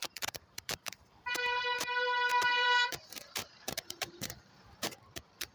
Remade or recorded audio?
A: remade